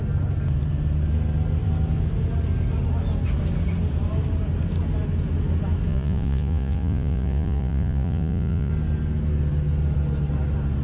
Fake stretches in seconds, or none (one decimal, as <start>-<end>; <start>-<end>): 5.9-8.7

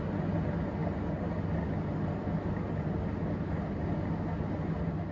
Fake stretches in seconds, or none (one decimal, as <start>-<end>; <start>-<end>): none

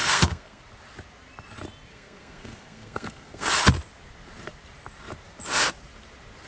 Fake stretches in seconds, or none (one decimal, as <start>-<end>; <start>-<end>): 0.0-0.6; 1.9-3.5

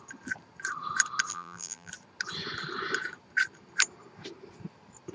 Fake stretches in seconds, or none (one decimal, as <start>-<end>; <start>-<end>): 1.3-1.9

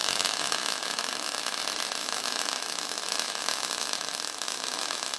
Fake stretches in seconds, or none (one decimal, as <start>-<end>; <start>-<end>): 0.0-1.6; 2.0-5.2